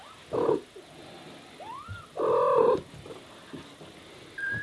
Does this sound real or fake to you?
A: real